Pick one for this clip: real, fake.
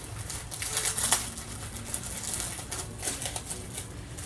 real